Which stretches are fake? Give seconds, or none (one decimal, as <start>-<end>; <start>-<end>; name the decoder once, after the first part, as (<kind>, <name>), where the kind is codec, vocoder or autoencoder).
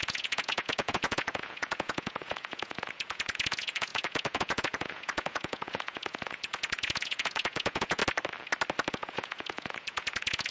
0.0-8.0 (vocoder, Vocos); 8.9-10.5